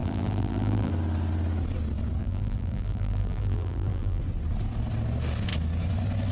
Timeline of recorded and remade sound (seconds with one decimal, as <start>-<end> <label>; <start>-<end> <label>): 0.0-0.9 remade; 0.9-2.2 recorded; 2.2-4.2 remade; 4.2-6.3 recorded